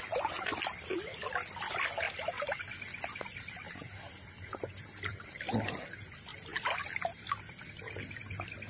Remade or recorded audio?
recorded